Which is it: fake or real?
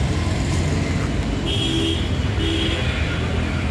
real